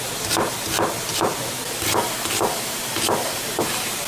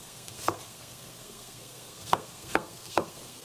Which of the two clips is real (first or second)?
first